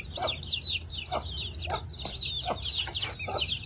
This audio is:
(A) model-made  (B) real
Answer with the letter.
B